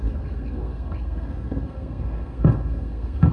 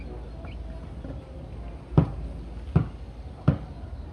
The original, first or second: second